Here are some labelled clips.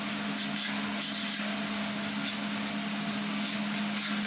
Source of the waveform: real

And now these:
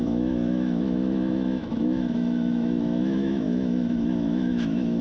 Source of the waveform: fake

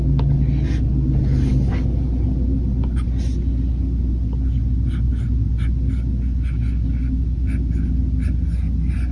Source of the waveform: real